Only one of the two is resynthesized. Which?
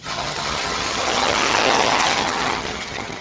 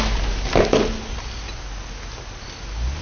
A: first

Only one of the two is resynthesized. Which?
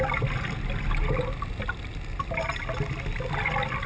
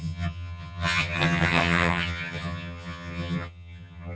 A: second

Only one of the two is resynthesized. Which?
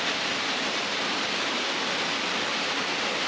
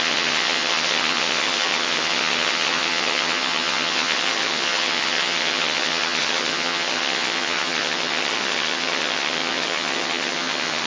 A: second